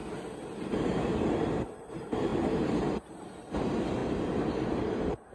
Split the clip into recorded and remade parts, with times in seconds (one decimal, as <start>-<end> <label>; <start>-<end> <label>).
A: 0.0-1.9 recorded; 1.9-2.3 remade; 2.3-2.9 recorded; 2.9-4.0 remade; 4.0-4.6 recorded; 4.6-5.3 remade